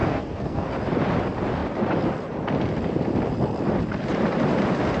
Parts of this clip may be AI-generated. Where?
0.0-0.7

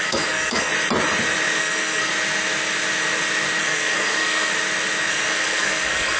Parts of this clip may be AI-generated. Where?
0.0-0.7; 1.6-2.1; 3.6-4.5; 5.1-6.2

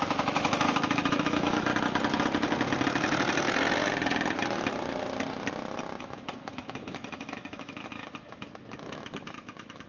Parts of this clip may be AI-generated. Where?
0.0-1.7; 6.0-9.9

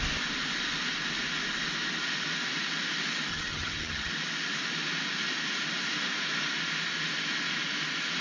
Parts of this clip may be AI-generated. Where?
3.3-4.1

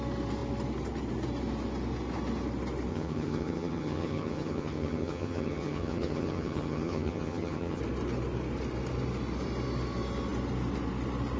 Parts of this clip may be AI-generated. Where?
2.9-7.8